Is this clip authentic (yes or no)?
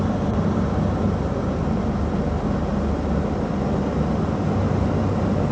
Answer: yes